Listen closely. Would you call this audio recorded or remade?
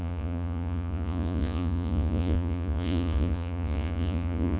remade